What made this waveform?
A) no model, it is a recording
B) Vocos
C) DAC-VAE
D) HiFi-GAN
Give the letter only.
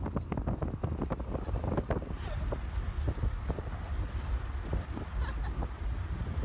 A